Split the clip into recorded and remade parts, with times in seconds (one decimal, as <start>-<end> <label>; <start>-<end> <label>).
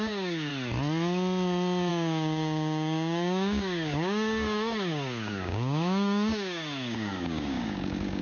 0.0-0.5 remade; 0.5-1.9 recorded; 1.9-8.2 remade